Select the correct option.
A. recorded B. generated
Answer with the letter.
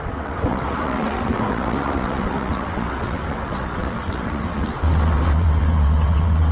B